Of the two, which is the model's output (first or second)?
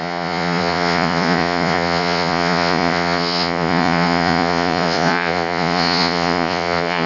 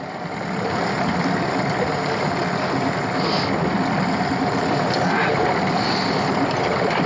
first